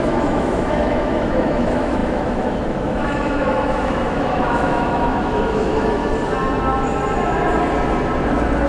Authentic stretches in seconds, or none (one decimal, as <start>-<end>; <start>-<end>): 6.0-8.7